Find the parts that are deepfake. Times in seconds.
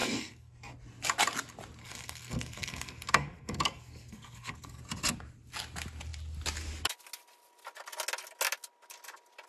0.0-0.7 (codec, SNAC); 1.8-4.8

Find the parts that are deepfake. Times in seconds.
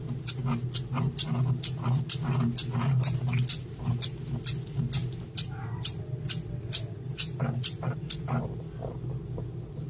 none